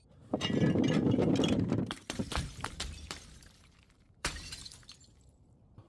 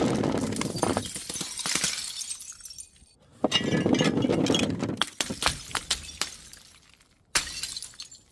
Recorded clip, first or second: second